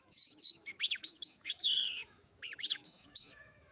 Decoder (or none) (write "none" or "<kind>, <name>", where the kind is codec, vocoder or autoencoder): autoencoder, DAC-VAE